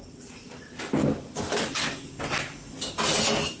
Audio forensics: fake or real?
real